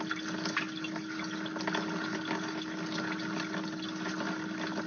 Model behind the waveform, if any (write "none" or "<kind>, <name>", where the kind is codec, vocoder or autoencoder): none